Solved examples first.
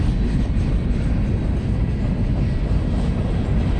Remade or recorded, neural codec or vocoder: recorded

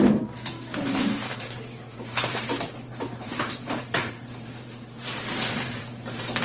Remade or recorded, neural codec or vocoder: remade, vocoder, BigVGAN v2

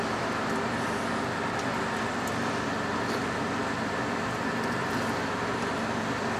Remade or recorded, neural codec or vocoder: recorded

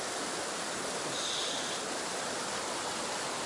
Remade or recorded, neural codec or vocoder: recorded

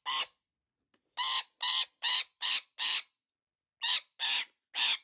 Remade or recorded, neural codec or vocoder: recorded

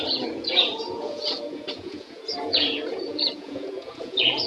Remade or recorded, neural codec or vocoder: remade, vocoder, Vocos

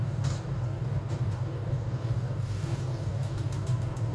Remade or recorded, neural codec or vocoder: remade, codec, DAC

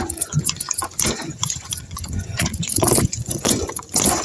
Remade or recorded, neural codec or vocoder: remade, vocoder, Vocos